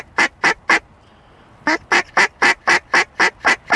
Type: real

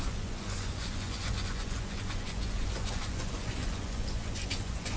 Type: fake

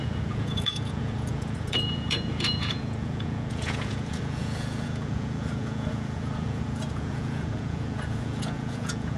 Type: fake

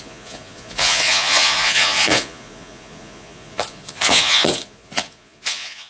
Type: fake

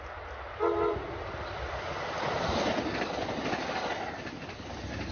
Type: real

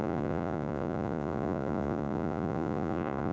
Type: fake